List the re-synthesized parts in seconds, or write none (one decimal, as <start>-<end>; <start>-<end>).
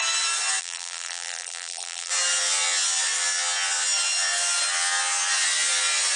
0.6-2.1